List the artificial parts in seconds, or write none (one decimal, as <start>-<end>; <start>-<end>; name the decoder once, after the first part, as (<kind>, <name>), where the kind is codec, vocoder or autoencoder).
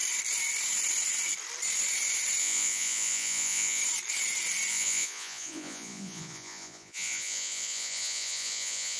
2.4-3.8 (vocoder, Vocos); 4.7-9.0